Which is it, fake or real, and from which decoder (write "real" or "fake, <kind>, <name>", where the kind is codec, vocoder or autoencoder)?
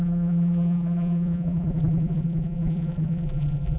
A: fake, vocoder, BigVGAN v2